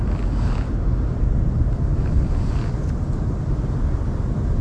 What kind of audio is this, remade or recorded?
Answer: recorded